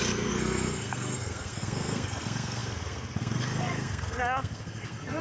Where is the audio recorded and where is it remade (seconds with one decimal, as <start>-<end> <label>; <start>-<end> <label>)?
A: 0.0-5.2 remade